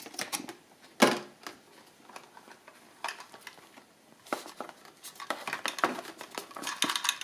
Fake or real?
real